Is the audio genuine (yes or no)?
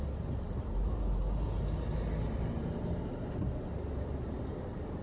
yes